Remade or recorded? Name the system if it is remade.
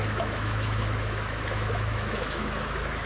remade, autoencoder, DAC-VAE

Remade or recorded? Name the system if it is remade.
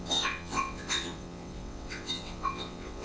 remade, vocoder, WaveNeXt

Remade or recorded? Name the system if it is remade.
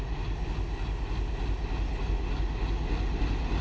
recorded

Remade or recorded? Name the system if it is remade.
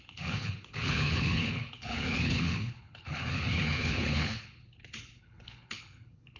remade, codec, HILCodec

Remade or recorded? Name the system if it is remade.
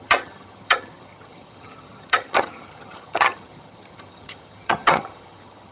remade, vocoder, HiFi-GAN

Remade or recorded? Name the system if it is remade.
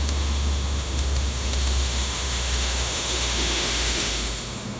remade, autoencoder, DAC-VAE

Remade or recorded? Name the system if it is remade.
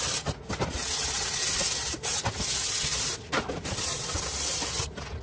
recorded